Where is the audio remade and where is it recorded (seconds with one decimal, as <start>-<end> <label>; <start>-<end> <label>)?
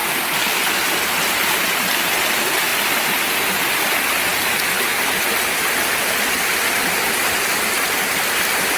0.0-8.8 recorded